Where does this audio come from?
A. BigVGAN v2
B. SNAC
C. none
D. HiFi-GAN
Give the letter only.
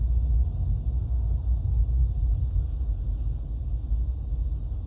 C